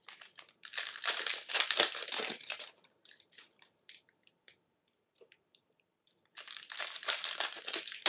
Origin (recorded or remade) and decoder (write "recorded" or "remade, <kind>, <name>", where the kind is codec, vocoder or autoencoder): remade, vocoder, BigVGAN v2